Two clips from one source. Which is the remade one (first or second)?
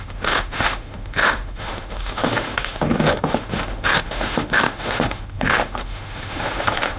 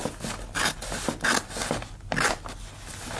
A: first